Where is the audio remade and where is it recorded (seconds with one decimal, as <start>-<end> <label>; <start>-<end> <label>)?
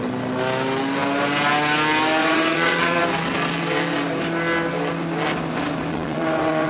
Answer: 0.0-2.2 recorded; 2.2-3.0 remade; 3.0-5.9 recorded; 5.9-6.7 remade